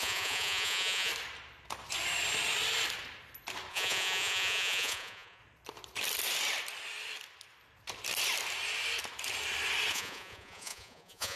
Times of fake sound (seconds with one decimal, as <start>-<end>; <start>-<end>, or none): 0.0-1.1; 3.7-5.4; 9.9-11.4